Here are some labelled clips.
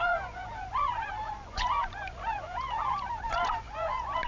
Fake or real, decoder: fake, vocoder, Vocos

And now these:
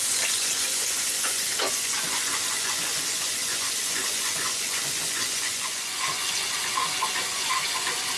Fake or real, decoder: fake, vocoder, Vocos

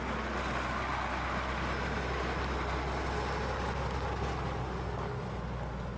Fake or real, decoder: real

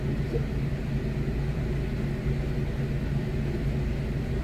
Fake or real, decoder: real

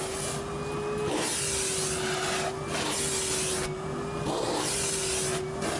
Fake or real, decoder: real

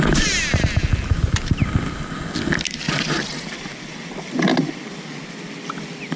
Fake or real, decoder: real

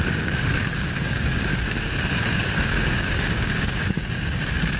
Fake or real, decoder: fake, codec, DAC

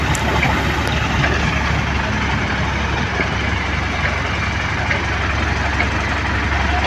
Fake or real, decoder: real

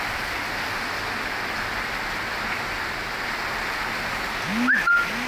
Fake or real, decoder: real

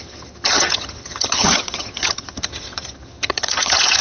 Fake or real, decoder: fake, vocoder, HiFi-GAN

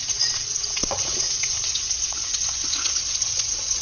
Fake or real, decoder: fake, vocoder, WaveNeXt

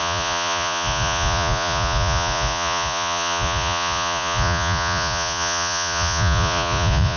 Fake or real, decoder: fake, vocoder, Vocos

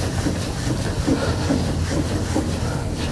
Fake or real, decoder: real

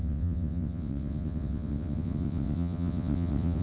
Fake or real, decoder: fake, vocoder, WaveNeXt